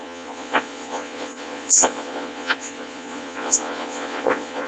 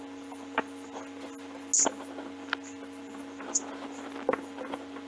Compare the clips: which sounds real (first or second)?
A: second